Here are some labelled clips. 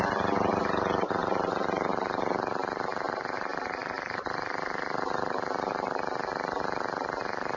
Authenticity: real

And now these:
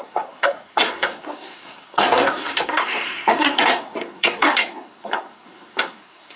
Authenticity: fake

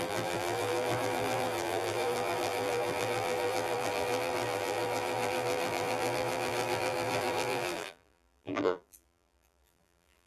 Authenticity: fake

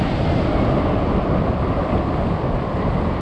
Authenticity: real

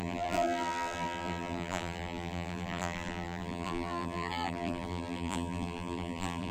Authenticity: fake